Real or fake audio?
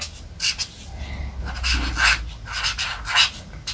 real